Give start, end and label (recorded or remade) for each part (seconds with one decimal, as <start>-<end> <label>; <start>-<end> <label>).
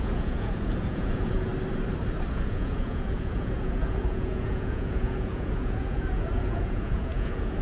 0.0-1.5 remade; 1.5-2.3 recorded; 2.3-7.6 remade